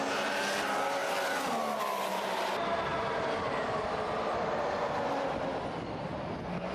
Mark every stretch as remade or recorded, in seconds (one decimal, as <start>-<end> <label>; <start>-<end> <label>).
0.0-6.7 recorded